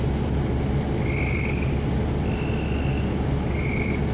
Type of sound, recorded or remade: recorded